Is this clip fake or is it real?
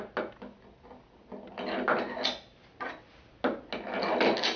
real